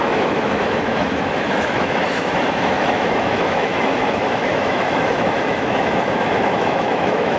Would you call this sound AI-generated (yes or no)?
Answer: yes